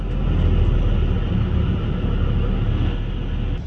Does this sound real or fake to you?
real